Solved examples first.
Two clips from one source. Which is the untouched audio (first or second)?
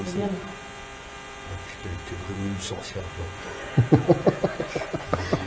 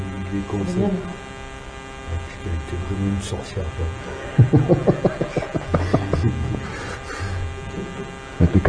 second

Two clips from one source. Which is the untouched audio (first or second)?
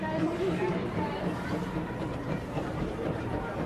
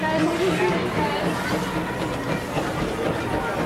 second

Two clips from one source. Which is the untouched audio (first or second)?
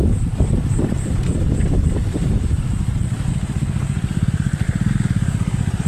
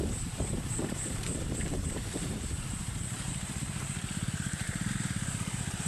first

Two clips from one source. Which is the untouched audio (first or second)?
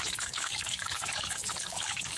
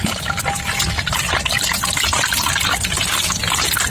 second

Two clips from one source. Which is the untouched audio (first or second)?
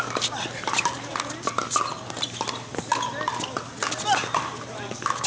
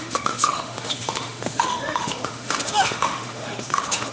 first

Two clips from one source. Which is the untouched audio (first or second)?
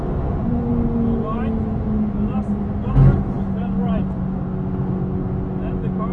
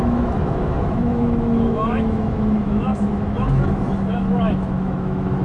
first